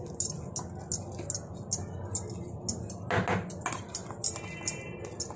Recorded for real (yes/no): yes